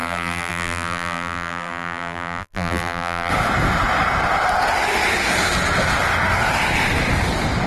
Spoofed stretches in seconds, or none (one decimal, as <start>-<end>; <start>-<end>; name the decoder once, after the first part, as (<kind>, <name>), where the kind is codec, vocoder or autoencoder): 0.0-3.3 (vocoder, BigVGAN v2)

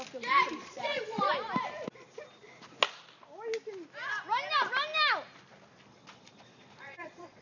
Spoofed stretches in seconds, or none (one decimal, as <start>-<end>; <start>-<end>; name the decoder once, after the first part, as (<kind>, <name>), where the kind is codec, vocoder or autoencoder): 0.6-1.3 (vocoder, Vocos); 5.9-7.4

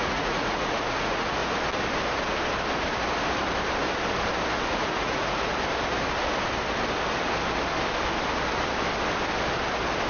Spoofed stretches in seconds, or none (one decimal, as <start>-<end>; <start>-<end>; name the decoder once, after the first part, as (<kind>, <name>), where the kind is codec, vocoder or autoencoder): 0.0-1.4 (vocoder, Vocos); 4.7-5.5

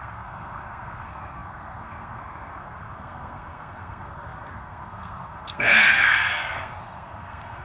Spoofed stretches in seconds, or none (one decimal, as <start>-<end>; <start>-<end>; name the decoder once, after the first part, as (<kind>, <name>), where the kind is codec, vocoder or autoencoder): 0.0-7.6 (codec, SNAC)

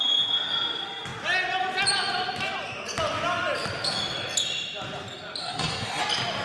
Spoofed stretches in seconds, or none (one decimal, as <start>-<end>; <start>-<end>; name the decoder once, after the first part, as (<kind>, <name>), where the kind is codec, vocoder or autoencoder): 5.4-6.0 (codec, SNAC)

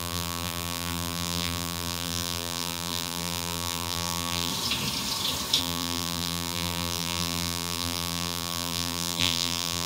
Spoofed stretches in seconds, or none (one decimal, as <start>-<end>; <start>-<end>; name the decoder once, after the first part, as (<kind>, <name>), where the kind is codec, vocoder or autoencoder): 0.0-4.5 (vocoder, BigVGAN v2); 5.6-9.9

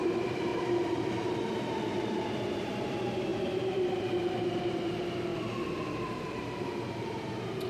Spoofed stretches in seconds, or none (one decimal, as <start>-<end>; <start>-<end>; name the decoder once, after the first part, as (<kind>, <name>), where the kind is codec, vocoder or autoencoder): 0.0-5.3 (vocoder, BigVGAN v2); 5.8-7.7

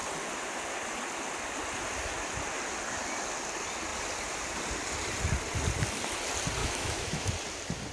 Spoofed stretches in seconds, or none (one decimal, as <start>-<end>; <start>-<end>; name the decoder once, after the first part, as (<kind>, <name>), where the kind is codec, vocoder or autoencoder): 6.6-7.3 (autoencoder, DAC-VAE)